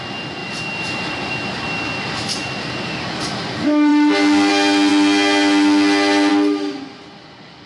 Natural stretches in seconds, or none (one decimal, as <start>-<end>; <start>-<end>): 0.0-0.4; 1.3-7.7